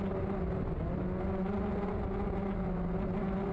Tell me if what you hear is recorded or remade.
recorded